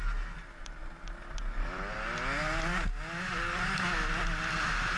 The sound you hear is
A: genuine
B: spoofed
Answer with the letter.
A